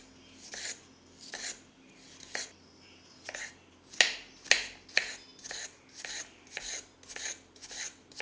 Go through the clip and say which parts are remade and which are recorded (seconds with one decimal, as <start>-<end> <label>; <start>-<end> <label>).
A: 0.0-0.5 recorded; 0.5-4.0 remade; 4.0-8.2 recorded